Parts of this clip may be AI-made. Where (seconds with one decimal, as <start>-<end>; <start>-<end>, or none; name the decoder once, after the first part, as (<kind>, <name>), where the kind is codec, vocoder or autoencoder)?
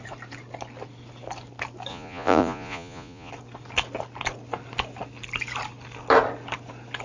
1.9-3.3 (vocoder, Vocos)